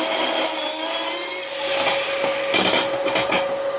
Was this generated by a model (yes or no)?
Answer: no